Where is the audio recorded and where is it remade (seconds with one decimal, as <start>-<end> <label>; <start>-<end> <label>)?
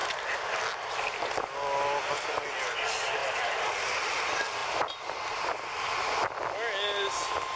0.0-7.6 recorded